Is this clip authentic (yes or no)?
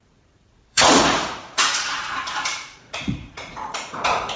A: no